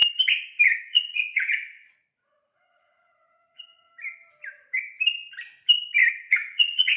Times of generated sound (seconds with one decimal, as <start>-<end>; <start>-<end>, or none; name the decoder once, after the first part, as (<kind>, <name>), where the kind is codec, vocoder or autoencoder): 0.8-3.9 (vocoder, Vocos); 6.1-7.0